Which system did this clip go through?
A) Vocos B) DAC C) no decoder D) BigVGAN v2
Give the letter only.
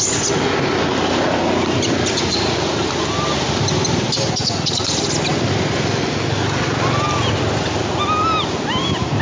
C